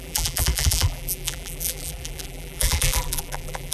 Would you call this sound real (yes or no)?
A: no